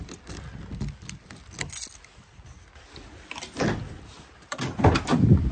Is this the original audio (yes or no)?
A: yes